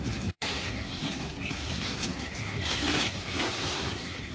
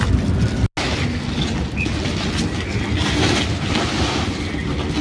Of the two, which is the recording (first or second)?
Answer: second